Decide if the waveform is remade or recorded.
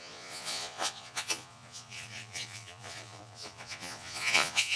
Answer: remade